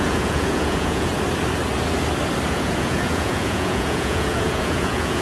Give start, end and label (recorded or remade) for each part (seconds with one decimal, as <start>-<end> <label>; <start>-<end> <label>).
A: 0.0-1.1 remade; 1.1-2.5 recorded; 2.5-5.2 remade